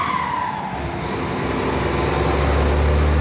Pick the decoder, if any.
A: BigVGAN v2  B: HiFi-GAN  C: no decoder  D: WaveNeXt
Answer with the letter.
C